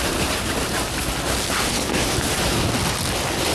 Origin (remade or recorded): recorded